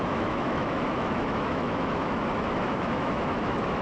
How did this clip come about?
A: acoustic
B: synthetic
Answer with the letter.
B